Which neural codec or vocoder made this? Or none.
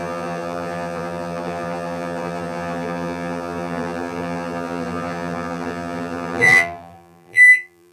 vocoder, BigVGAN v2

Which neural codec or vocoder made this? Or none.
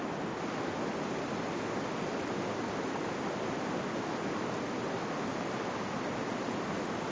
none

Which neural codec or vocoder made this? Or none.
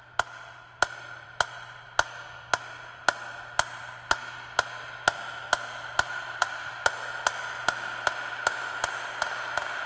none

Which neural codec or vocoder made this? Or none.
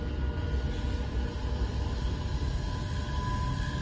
none